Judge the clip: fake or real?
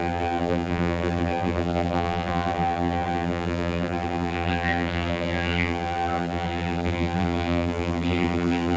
fake